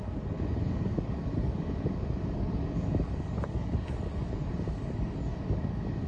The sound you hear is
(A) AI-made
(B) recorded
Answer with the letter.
A